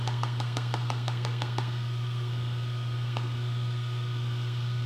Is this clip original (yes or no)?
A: no